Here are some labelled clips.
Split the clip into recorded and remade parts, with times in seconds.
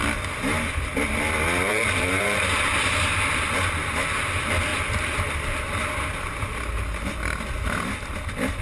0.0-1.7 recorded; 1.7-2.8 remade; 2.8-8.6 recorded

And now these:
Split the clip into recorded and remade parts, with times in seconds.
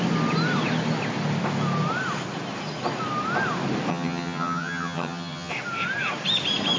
0.0-3.9 recorded; 3.9-5.5 remade; 5.5-6.8 recorded